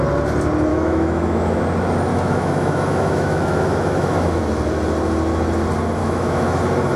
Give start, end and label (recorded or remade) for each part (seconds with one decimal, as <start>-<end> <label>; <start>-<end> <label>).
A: 0.0-0.7 recorded; 0.7-1.6 remade; 1.6-2.1 recorded; 2.1-4.4 remade; 4.4-6.0 recorded; 6.0-6.6 remade; 6.6-7.0 recorded